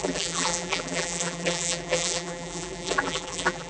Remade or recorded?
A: remade